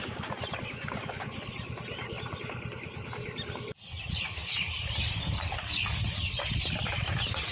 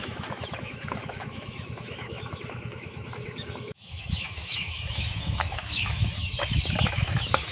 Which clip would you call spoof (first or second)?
second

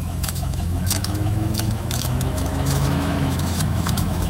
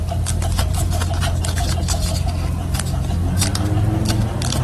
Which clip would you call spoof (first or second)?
first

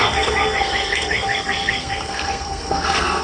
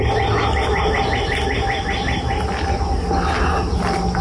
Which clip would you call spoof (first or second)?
first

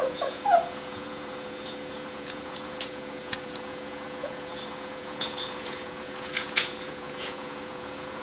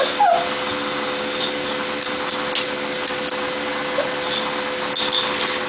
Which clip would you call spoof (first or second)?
first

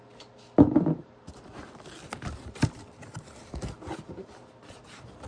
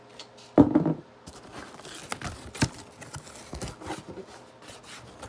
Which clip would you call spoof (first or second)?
first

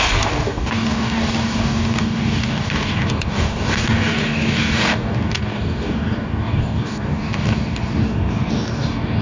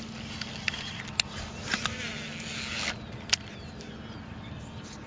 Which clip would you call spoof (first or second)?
first